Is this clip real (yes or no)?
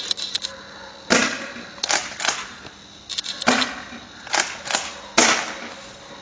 yes